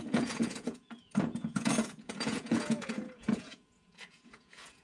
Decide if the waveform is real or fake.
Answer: fake